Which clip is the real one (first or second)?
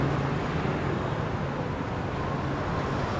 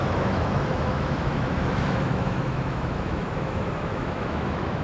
first